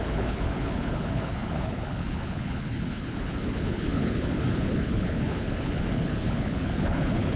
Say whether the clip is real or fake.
fake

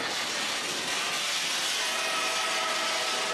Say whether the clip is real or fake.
real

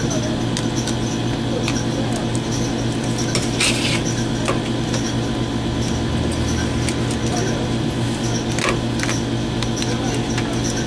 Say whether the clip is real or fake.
real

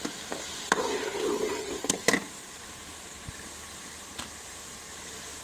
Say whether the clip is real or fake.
fake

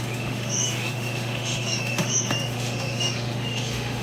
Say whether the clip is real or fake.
fake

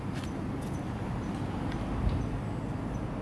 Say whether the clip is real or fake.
real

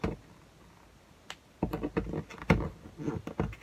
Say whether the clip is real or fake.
real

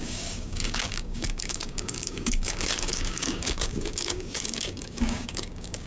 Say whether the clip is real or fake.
fake